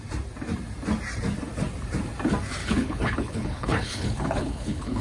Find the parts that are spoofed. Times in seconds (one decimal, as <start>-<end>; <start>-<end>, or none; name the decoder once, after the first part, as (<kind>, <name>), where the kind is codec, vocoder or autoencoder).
2.6-5.0 (codec, HILCodec)